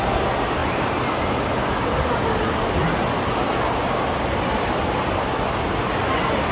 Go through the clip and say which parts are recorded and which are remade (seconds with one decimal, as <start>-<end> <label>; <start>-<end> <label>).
0.0-6.5 recorded